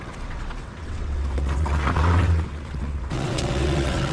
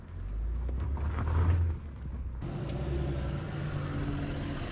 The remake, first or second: first